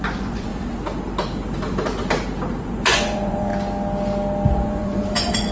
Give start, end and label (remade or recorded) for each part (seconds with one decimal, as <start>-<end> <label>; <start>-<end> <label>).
0.0-0.5 remade; 0.5-2.6 recorded; 2.6-3.5 remade; 3.5-4.5 recorded; 4.5-5.5 remade